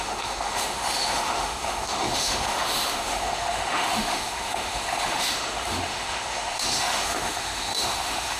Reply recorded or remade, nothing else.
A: remade